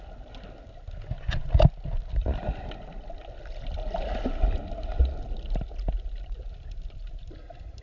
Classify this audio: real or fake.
real